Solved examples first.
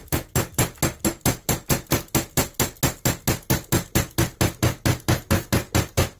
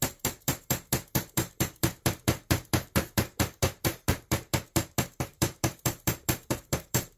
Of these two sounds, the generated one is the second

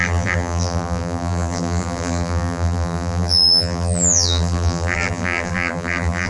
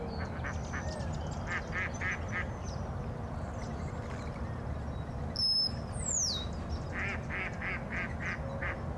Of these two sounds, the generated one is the first